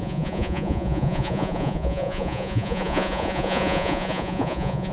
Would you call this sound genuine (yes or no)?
no